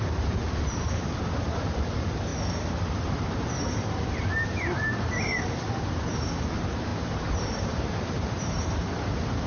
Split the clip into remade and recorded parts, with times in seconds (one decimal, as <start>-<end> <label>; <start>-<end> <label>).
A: 0.0-0.4 remade; 0.4-1.4 recorded; 1.4-2.3 remade; 2.3-2.9 recorded; 2.9-5.3 remade; 5.3-5.9 recorded; 5.9-9.5 remade